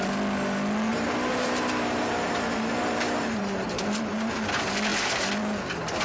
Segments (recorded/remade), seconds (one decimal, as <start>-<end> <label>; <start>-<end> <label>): 0.0-0.9 recorded; 0.9-4.3 remade; 4.3-6.0 recorded